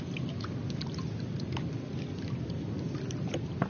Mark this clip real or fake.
real